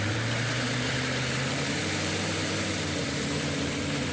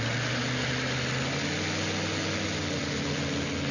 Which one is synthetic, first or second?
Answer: first